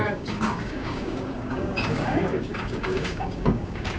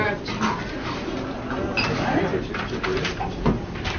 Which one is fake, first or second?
first